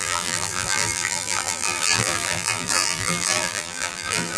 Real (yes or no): no